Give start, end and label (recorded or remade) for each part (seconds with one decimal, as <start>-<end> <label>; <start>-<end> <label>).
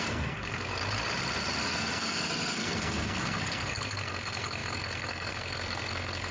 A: 0.0-0.8 remade; 0.8-1.6 recorded; 1.6-6.3 remade